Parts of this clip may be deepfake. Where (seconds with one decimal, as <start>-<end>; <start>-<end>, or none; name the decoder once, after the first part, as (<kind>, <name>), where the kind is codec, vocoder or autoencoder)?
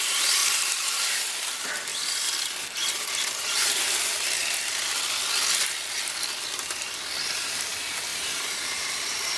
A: 0.0-1.9 (vocoder, BigVGAN v2); 2.6-4.4; 7.4-9.4